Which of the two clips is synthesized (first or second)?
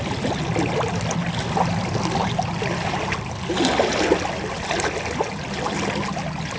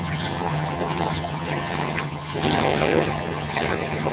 second